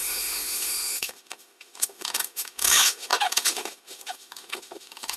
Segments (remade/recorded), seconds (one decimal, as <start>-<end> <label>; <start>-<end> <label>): 0.0-5.2 remade